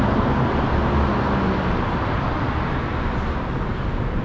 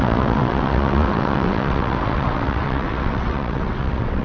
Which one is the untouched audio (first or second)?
first